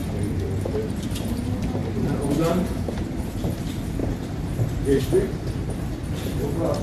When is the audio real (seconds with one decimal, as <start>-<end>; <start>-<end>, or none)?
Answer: 0.0-1.8; 3.6-4.0; 5.0-6.8